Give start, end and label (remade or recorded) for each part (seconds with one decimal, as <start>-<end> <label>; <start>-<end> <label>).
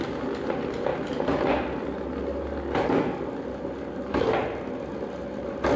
0.0-5.8 recorded